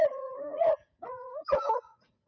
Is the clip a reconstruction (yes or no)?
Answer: yes